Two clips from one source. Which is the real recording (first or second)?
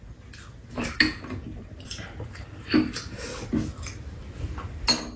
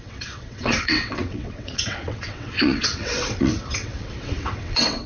first